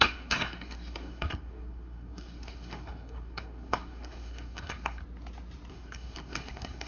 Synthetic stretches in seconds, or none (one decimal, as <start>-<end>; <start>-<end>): 0.0-5.0; 5.7-6.9